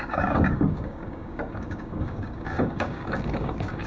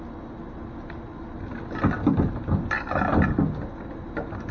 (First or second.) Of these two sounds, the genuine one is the second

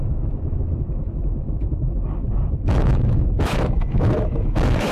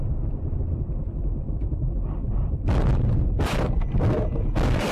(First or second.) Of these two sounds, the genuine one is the second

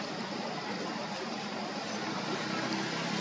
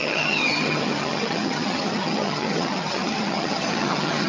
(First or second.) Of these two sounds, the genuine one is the first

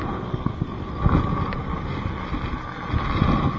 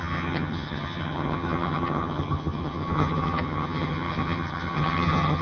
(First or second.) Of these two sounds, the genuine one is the first